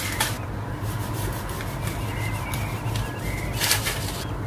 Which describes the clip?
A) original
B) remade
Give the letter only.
A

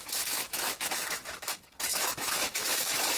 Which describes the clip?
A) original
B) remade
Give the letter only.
B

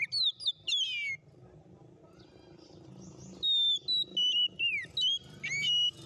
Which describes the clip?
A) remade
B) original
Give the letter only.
B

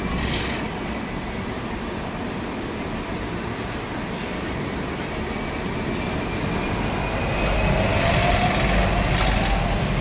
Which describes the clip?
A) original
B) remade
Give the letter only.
A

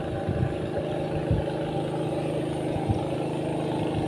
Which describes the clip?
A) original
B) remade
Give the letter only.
A